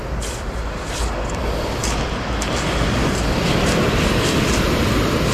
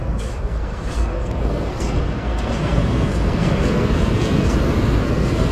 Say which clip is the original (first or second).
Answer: first